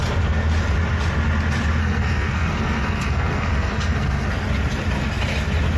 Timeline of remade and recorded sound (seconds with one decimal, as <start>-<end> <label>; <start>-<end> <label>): 0.0-1.8 recorded; 1.8-4.3 remade; 4.3-5.8 recorded